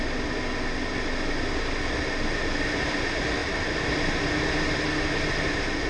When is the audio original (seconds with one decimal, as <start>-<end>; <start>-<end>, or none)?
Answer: 0.0-5.9